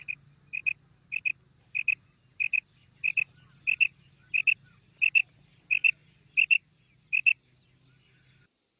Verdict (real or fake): real